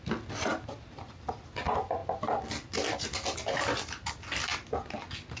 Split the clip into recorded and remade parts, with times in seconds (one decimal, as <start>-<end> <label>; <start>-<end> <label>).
0.0-0.5 recorded; 0.5-1.4 remade; 1.4-5.4 recorded